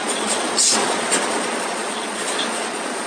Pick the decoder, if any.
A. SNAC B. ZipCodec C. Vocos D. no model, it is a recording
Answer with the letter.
C